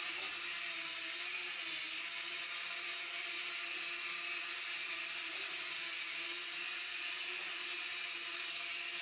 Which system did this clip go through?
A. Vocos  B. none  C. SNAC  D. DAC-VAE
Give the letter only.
B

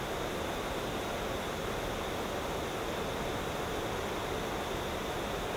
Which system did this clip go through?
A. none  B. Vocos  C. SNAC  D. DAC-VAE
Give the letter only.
A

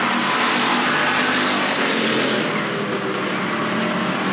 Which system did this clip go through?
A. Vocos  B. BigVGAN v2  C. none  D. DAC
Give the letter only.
C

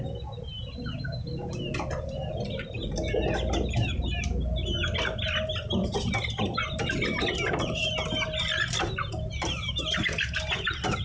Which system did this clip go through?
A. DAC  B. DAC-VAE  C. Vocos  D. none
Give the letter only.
D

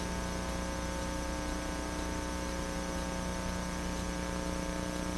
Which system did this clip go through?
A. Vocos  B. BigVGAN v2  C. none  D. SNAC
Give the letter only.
C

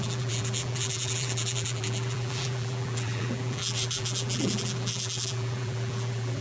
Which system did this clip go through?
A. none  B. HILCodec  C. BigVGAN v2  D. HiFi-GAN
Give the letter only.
C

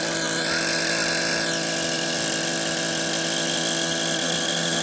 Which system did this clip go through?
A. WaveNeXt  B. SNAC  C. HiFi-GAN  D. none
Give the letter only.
D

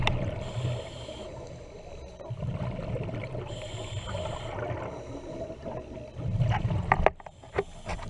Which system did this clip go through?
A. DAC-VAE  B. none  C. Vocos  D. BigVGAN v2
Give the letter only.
B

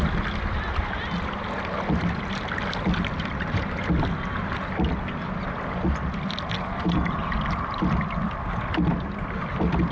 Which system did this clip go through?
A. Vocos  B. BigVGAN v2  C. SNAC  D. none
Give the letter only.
D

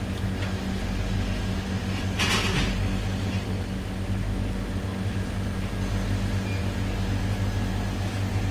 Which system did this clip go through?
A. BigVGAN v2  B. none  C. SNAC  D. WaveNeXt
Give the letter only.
B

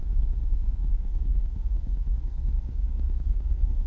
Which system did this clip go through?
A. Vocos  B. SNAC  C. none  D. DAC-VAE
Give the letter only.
B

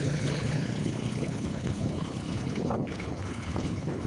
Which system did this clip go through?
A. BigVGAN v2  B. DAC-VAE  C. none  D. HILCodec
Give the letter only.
D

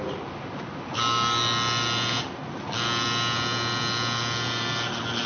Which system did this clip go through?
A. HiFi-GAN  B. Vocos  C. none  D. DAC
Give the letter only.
C